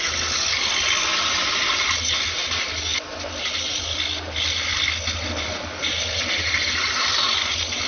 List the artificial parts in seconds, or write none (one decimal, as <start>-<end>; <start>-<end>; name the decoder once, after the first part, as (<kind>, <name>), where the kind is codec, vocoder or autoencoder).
none

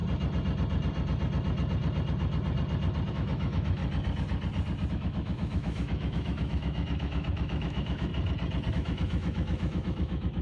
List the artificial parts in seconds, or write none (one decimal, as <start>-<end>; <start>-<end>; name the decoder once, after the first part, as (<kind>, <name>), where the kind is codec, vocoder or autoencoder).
3.1-3.8 (autoencoder, DAC-VAE); 4.9-8.1; 8.7-10.4